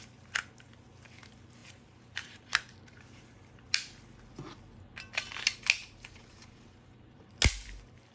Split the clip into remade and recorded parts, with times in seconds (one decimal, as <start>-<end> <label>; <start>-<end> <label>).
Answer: 0.0-1.6 recorded; 1.6-2.7 remade; 2.7-5.8 recorded; 5.8-7.2 remade; 7.2-8.1 recorded